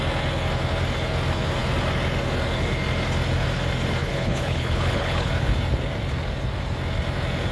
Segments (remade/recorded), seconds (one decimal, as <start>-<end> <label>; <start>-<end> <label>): 0.0-4.0 recorded; 4.0-5.3 remade; 5.3-7.5 recorded